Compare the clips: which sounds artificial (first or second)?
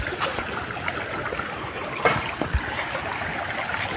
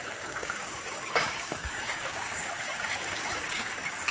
second